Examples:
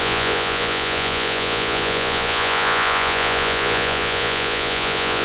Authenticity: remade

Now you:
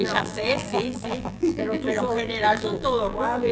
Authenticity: remade